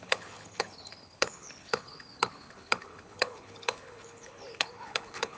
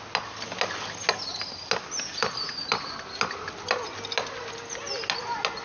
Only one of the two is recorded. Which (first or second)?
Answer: second